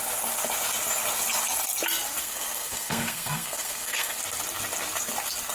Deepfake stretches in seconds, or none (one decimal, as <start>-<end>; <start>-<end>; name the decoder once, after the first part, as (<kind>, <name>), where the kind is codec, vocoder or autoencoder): 2.2-4.2 (codec, SNAC)